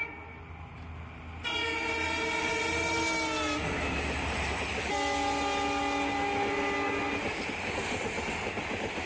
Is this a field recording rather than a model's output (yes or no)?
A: yes